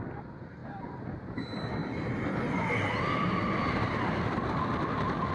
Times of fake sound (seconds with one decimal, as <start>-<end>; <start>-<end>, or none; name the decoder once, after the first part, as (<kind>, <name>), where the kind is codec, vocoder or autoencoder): 0.0-0.6 (vocoder, BigVGAN v2); 1.3-1.8